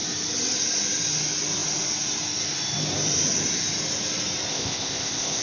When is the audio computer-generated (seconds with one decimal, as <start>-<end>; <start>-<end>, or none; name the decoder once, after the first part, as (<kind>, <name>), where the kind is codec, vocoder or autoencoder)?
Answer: 4.5-5.4 (codec, ZipCodec)